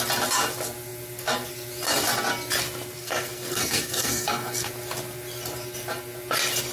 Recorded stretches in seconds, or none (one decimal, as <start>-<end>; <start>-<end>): 0.0-3.0; 4.7-6.7